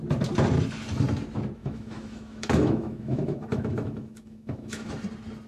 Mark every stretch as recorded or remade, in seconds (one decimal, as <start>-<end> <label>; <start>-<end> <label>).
0.0-1.6 recorded; 1.6-4.9 remade; 4.9-5.5 recorded